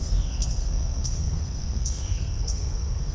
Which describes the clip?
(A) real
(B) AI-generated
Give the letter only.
B